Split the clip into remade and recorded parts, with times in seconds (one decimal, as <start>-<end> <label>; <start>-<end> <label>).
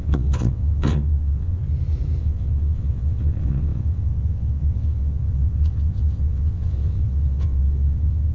0.0-1.6 remade; 1.6-2.2 recorded; 2.2-8.3 remade